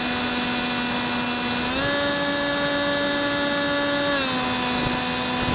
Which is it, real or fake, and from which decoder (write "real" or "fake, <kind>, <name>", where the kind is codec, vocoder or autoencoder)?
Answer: real